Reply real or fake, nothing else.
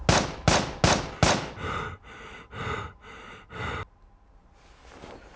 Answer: real